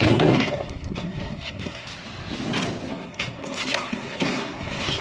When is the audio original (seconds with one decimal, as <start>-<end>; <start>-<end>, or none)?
1.9-2.9